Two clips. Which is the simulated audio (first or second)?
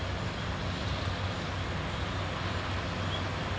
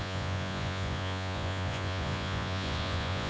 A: second